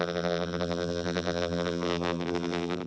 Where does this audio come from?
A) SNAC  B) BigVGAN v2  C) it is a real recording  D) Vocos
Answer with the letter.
B